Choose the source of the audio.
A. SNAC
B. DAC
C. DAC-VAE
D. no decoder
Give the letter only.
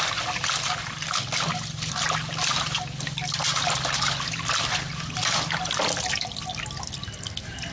D